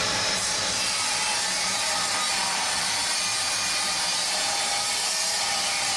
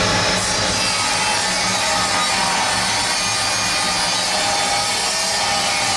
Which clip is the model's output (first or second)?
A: first